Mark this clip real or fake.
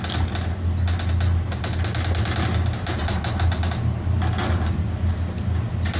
real